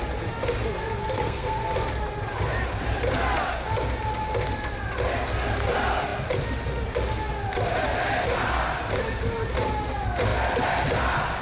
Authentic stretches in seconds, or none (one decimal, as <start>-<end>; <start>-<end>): 0.0-1.0; 1.6-11.4